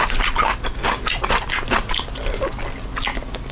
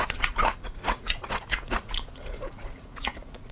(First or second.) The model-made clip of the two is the second